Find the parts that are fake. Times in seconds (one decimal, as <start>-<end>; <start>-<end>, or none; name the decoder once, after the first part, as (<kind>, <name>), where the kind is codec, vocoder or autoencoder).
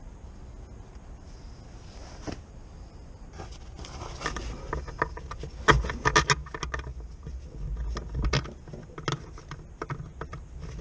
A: none